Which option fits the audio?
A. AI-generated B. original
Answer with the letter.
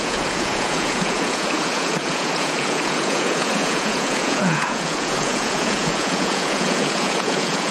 A